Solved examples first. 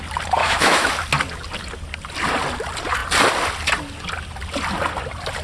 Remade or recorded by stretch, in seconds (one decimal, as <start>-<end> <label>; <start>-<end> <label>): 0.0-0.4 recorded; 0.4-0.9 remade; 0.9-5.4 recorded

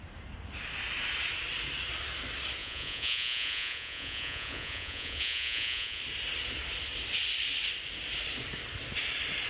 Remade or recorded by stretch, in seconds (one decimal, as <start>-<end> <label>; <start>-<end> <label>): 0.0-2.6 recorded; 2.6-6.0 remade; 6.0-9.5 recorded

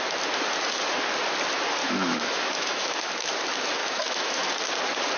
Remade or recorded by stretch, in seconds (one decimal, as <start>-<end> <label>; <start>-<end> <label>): 0.0-1.8 recorded; 1.8-3.4 remade; 3.4-3.8 recorded; 3.8-4.5 remade; 4.5-5.2 recorded

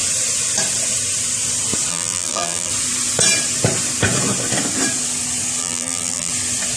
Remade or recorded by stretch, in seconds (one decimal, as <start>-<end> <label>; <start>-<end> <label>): 0.0-1.9 recorded; 1.9-2.7 remade; 2.7-5.6 recorded; 5.6-6.3 remade; 6.3-6.8 recorded

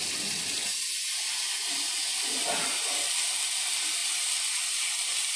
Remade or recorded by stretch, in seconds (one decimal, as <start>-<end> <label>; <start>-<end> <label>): 0.0-5.4 recorded